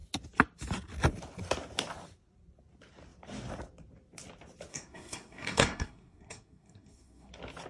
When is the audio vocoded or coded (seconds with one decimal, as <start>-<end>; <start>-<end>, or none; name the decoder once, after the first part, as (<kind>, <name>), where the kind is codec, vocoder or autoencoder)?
4.7-7.3 (codec, SNAC)